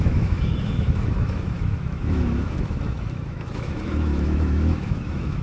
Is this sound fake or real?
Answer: fake